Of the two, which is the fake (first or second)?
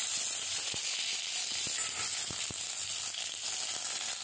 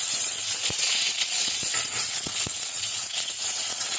second